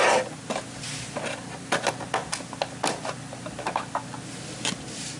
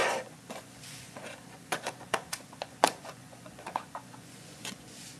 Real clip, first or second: first